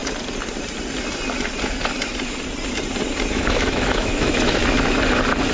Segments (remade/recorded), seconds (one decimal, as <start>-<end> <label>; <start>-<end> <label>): 0.0-3.3 recorded; 3.3-4.6 remade; 4.6-5.5 recorded